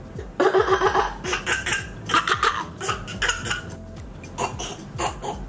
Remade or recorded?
recorded